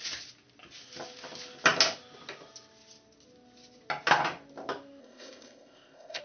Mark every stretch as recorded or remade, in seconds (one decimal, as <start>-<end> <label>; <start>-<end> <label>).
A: 0.0-5.0 recorded; 5.0-6.2 remade